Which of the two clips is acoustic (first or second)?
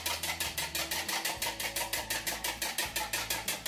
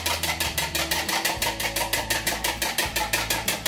first